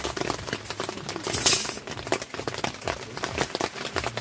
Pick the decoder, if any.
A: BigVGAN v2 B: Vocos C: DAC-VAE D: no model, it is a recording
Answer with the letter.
D